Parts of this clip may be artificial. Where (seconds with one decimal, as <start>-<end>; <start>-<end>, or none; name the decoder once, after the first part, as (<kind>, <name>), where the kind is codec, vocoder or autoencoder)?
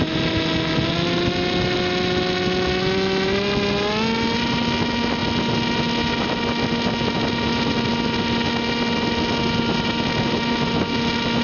none